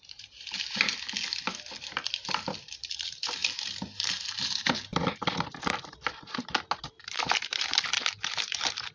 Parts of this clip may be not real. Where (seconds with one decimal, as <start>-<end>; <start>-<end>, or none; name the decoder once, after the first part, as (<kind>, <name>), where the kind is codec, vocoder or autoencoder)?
0.0-0.9 (vocoder, BigVGAN v2); 2.1-5.0; 7.0-8.9